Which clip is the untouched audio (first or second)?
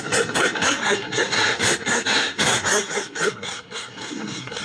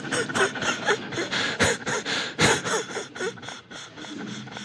second